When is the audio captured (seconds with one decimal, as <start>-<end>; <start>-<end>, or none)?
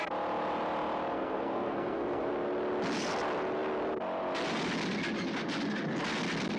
0.0-1.1; 2.3-6.6